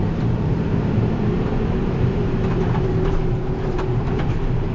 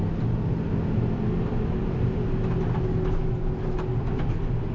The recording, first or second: second